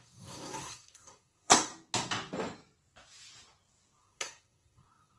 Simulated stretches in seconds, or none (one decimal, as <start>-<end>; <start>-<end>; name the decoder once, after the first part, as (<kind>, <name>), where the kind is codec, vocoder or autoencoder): 0.0-1.7 (codec, SNAC); 4.0-5.2